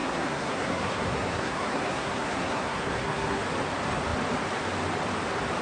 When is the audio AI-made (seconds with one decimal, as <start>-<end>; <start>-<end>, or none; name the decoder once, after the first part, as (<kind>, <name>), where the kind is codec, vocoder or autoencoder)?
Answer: 0.0-3.4 (codec, SNAC)